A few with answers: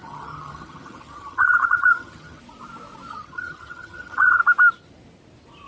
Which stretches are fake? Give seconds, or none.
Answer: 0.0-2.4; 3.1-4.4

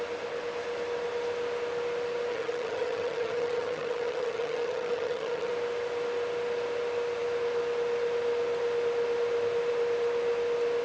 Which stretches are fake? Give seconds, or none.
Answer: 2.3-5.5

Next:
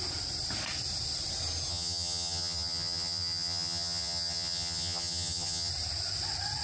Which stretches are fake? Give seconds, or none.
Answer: 1.7-5.7